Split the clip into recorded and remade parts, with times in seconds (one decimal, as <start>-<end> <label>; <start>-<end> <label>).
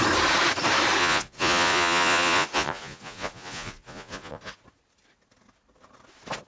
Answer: 0.0-1.0 recorded; 1.0-4.6 remade; 4.6-6.5 recorded